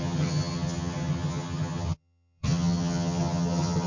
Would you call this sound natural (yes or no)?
no